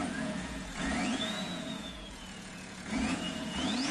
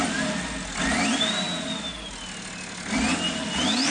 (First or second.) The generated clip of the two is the first